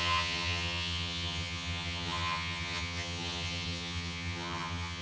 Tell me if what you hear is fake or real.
fake